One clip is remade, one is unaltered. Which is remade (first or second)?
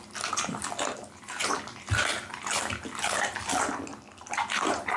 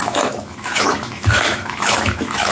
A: second